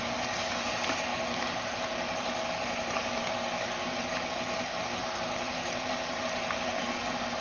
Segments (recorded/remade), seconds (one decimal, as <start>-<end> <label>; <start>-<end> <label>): 0.0-7.4 recorded